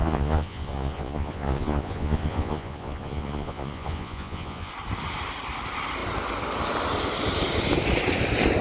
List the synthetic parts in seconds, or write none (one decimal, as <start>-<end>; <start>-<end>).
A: 0.0-4.7